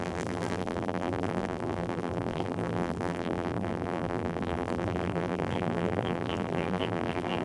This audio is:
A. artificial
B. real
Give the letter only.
A